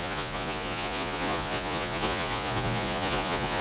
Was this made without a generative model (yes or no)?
no